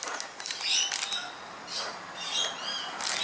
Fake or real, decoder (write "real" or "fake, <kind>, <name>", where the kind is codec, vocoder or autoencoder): real